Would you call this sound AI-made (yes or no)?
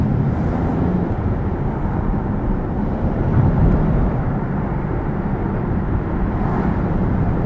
yes